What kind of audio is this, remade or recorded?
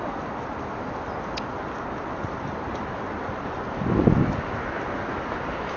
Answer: recorded